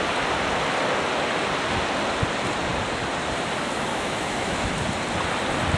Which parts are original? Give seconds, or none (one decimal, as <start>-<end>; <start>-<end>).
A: 0.0-3.9; 4.7-5.8